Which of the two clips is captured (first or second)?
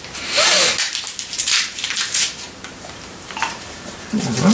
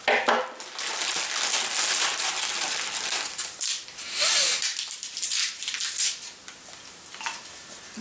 second